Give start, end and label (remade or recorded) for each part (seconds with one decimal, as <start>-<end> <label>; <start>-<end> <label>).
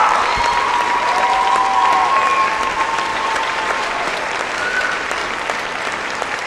0.0-3.1 recorded; 3.1-4.2 remade; 4.2-6.5 recorded